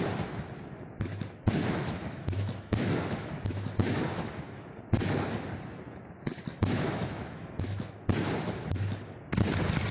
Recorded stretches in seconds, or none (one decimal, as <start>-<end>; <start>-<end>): 0.0-1.6; 4.7-6.5; 7.9-9.9